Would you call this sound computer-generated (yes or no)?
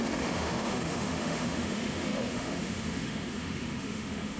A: yes